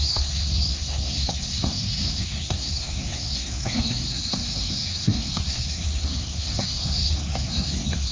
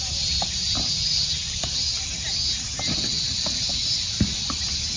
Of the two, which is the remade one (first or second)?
first